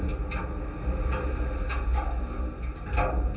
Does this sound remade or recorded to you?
recorded